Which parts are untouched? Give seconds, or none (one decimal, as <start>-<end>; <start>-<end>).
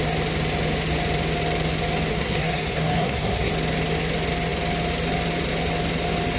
0.0-2.1; 3.5-6.4